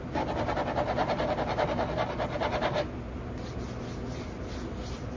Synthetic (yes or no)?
no